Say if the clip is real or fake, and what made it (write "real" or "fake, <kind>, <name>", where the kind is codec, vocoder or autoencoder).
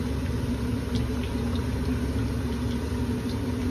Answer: real